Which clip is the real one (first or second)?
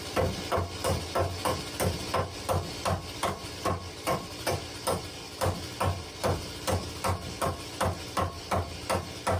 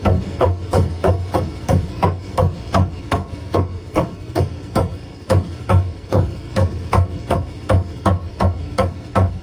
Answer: first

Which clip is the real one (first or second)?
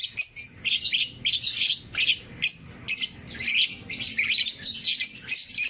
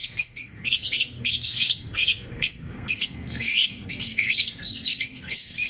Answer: first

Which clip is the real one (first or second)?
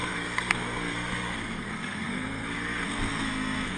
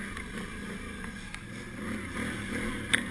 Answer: second